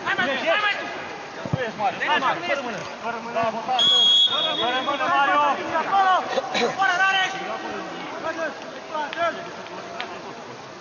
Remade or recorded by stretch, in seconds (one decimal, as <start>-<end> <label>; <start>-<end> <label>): 0.0-10.8 recorded